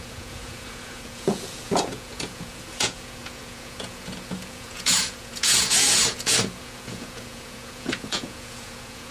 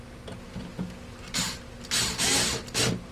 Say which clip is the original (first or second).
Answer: second